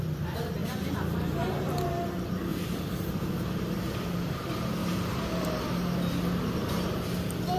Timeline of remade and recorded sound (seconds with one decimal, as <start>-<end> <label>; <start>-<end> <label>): 0.0-0.6 recorded; 0.6-1.7 remade; 1.7-4.8 recorded; 4.8-5.6 remade; 5.6-7.6 recorded